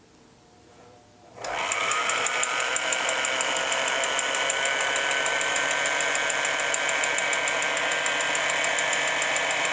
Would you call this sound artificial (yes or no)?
no